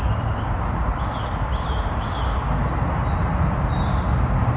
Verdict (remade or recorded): recorded